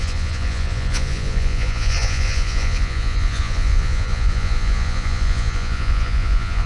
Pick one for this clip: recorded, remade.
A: remade